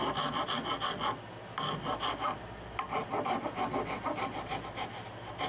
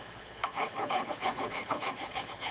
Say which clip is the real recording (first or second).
first